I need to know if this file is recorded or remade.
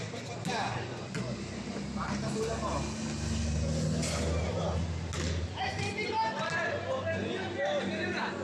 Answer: recorded